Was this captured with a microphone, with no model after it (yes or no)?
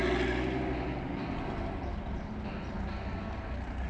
yes